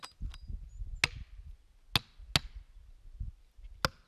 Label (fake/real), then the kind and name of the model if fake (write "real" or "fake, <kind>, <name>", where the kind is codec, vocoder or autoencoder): real